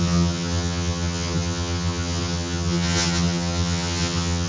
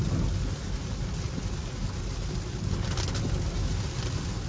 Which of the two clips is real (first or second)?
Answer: second